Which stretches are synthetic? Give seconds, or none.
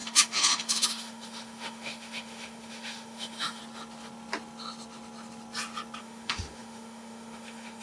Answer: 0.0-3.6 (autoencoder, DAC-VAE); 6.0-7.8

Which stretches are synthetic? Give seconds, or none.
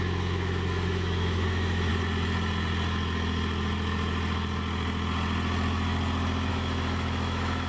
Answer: 0.0-1.9 (autoencoder, DAC-VAE); 6.5-7.7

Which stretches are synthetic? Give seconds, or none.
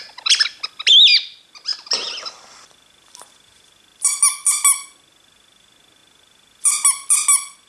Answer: none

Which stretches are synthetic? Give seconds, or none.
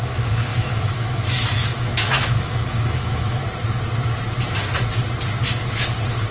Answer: 0.0-3.4 (autoencoder, DAC-VAE)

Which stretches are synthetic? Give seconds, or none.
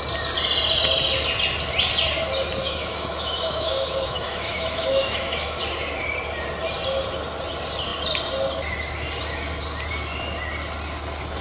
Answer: 2.6-5.6 (autoencoder, DAC-VAE)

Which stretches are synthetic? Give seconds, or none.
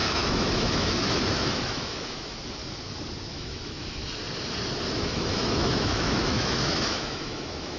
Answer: 0.0-2.6 (autoencoder, DAC-VAE); 3.3-4.0; 4.9-7.8